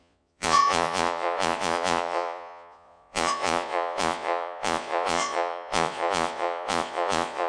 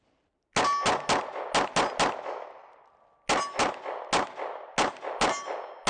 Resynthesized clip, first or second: first